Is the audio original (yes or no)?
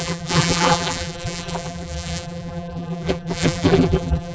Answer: no